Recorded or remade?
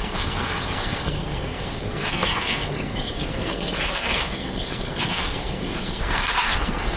remade